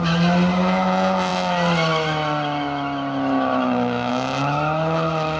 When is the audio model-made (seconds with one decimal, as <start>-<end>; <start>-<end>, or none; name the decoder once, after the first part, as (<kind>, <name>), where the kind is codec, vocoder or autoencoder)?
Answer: none